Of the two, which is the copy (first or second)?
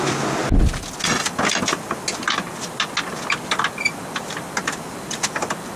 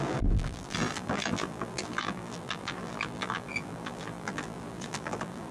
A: second